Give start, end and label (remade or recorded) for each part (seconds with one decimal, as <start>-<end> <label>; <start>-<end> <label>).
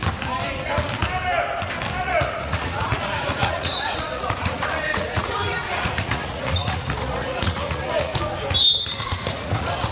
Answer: 0.0-2.0 recorded; 2.0-8.1 remade; 8.1-9.0 recorded; 9.0-9.9 remade